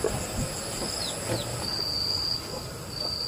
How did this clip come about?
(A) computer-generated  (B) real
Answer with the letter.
B